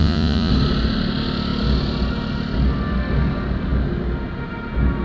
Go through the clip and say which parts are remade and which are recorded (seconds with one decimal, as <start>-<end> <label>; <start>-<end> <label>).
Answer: 0.0-0.5 remade; 0.5-5.0 recorded